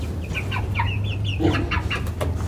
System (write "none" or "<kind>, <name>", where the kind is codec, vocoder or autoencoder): none